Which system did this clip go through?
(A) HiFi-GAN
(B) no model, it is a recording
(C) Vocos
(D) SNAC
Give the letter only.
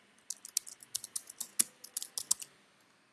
B